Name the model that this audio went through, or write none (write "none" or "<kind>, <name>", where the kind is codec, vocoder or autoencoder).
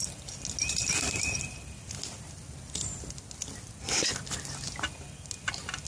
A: none